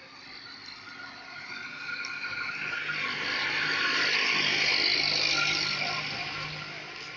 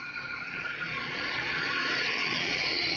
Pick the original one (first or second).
first